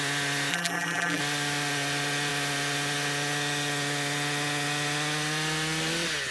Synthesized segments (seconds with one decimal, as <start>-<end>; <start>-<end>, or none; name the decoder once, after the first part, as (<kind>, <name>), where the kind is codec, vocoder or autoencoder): 0.5-1.2 (vocoder, BigVGAN v2)